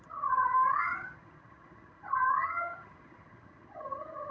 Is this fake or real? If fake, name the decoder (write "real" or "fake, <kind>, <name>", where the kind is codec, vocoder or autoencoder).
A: fake, vocoder, HiFi-GAN